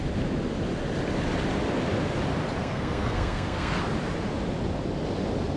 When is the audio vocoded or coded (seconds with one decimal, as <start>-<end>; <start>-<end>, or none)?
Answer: 2.6-3.8